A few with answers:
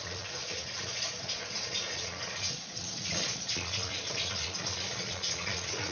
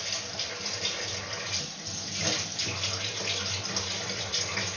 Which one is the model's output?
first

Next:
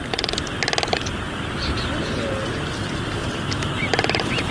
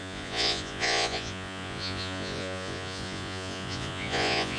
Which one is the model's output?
second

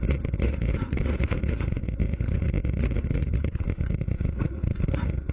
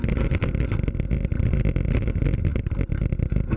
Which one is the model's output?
first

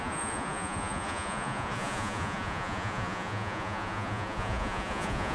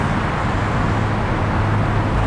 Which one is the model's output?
first